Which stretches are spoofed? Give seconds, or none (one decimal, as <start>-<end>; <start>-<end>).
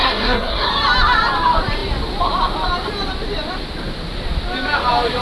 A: 0.0-0.7